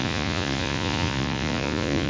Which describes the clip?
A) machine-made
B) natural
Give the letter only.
A